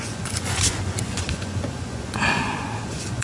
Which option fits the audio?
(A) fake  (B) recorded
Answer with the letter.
A